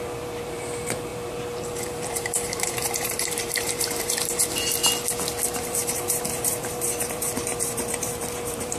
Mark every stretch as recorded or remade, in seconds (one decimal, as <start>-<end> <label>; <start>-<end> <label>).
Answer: 0.0-4.8 remade; 4.8-5.6 recorded; 5.6-8.8 remade